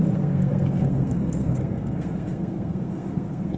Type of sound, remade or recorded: remade